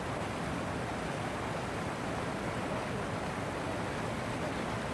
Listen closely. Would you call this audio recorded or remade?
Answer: recorded